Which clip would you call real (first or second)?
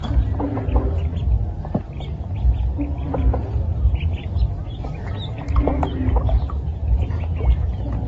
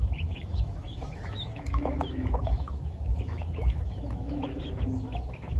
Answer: first